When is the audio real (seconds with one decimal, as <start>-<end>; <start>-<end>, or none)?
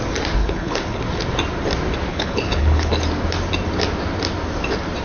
0.0-0.4; 1.0-2.1; 2.9-5.0